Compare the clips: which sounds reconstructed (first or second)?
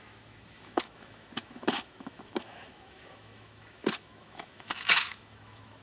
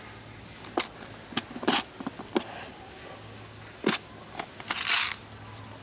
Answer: first